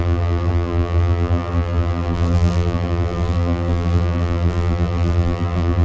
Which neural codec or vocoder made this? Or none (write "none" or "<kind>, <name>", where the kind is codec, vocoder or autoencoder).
vocoder, BigVGAN v2